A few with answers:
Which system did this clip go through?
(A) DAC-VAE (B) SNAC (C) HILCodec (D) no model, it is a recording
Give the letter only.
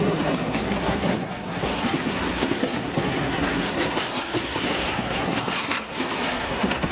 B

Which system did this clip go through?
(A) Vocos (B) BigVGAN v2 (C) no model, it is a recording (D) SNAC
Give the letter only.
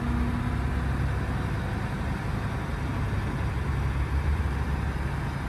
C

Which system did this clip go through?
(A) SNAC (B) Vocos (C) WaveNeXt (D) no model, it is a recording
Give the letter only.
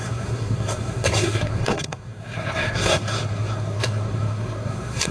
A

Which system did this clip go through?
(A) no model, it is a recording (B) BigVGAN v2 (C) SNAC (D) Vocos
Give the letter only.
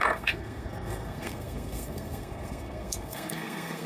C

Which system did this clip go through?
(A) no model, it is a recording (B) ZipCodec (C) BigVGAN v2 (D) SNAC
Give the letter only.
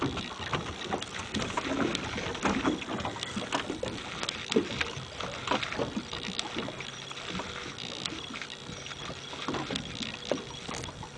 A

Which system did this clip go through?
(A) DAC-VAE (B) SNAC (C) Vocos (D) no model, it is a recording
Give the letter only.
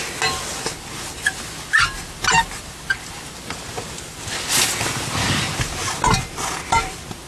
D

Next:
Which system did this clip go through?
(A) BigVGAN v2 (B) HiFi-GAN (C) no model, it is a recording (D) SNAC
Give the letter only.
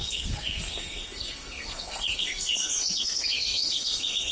D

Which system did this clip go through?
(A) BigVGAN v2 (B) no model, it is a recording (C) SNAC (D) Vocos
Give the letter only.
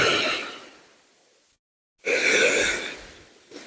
B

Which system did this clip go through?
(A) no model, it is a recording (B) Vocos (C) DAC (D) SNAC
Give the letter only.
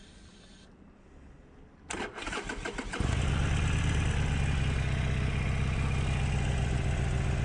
A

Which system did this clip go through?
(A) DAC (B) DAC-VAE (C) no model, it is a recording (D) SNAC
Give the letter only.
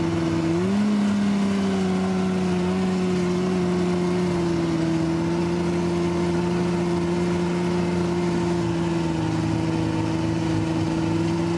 C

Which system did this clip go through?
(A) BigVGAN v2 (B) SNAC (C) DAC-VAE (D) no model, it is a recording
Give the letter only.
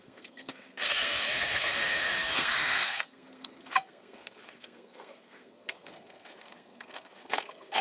B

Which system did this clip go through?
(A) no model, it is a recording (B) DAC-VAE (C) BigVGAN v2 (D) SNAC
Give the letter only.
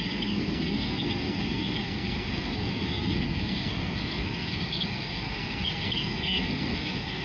D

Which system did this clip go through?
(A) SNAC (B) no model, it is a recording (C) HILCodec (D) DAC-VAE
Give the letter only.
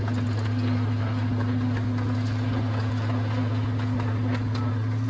B